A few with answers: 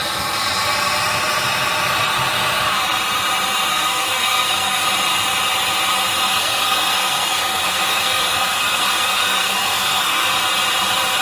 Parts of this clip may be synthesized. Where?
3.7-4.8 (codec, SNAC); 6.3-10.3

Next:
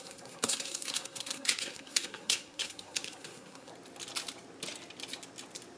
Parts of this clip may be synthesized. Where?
0.0-3.7 (codec, SNAC)

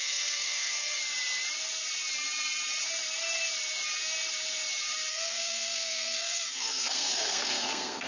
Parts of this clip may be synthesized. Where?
0.0-1.0 (codec, SNAC); 5.1-8.1